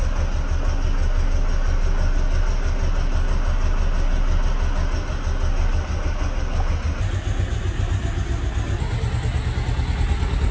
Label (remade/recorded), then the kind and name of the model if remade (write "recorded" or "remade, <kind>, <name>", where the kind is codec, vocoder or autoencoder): recorded